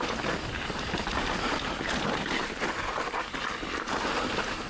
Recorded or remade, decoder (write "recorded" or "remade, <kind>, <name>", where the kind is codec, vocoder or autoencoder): recorded